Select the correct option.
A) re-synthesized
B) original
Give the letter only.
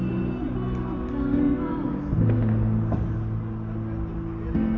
B